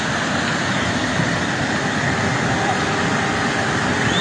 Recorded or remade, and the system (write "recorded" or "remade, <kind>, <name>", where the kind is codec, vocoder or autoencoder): recorded